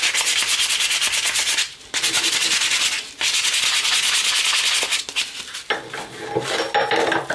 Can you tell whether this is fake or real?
real